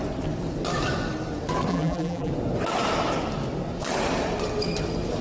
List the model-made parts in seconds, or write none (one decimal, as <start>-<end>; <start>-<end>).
1.7-2.3